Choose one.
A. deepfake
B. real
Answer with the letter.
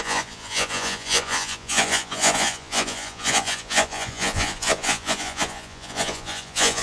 A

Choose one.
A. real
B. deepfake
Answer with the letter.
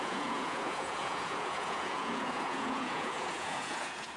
B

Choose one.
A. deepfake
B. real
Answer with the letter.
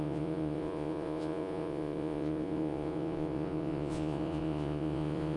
A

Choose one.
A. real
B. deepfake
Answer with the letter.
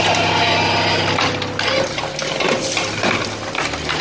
A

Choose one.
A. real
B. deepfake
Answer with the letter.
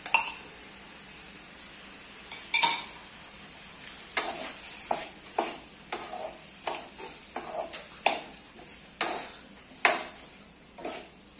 A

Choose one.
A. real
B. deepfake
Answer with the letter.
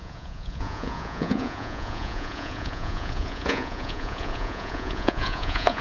B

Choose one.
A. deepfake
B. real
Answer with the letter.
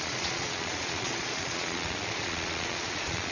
A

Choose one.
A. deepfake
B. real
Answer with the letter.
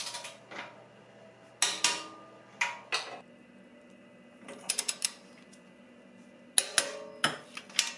B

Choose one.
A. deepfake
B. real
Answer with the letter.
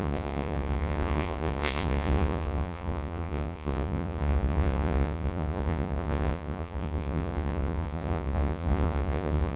A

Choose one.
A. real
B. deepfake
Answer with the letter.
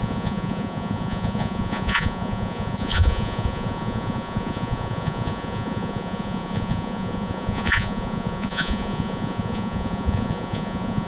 B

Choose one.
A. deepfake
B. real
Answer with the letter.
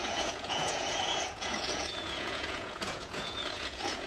A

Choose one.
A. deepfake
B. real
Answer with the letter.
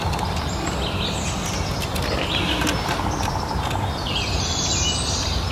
B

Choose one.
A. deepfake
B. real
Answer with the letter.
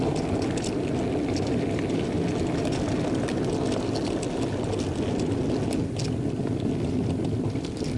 B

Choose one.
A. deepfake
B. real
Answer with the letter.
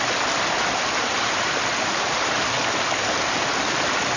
B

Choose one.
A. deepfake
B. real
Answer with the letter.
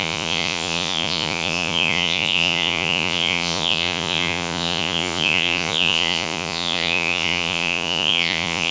A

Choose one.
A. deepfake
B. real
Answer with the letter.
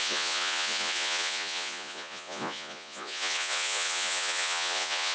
A